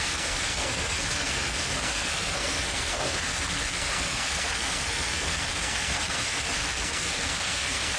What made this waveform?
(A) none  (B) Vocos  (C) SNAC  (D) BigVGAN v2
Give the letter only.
C